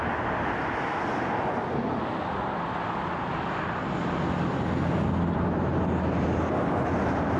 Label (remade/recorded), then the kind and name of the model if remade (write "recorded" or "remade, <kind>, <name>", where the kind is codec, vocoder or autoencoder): recorded